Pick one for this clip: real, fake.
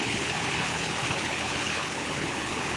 fake